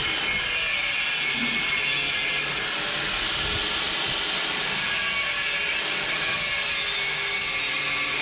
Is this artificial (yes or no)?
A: no